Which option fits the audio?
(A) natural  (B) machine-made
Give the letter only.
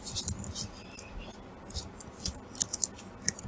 A